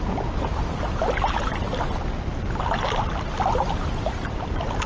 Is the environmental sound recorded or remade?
recorded